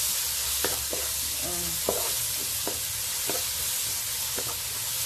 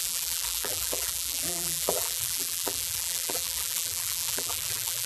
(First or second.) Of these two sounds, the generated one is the second